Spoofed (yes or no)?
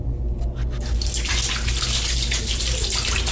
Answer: no